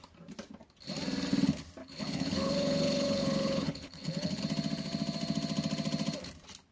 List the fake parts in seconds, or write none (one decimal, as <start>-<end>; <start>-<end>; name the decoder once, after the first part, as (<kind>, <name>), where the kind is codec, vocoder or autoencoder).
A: 1.8-4.4 (codec, HILCodec)

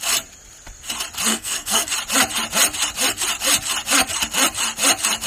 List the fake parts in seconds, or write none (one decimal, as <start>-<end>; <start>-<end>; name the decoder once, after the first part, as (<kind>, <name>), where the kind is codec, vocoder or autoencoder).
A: 1.3-1.9 (codec, SNAC)

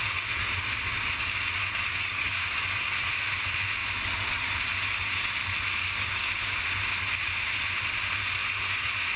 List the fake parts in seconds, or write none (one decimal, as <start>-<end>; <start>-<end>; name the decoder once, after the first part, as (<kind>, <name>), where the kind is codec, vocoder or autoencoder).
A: 1.9-2.6 (codec, DAC); 5.8-6.6

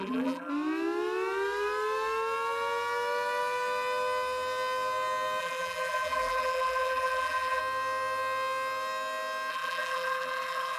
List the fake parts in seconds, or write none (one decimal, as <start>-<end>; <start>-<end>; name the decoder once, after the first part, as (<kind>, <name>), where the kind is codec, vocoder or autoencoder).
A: 0.0-0.5 (vocoder, BigVGAN v2); 5.4-7.6; 9.5-10.8

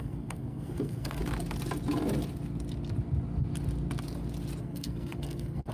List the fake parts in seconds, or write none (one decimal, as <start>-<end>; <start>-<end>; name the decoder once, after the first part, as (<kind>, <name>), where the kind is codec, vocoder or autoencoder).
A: 0.0-1.2 (codec, SNAC); 4.6-5.7

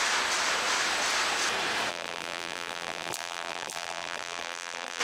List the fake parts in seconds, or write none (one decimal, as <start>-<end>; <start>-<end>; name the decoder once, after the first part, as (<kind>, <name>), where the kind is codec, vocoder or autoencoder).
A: 1.9-5.0 (vocoder, BigVGAN v2)